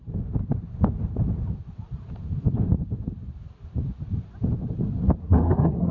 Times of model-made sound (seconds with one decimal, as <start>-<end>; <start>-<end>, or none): 5.2-5.9